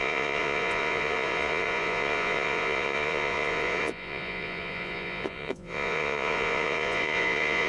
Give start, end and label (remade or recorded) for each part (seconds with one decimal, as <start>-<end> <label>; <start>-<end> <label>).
0.0-7.7 remade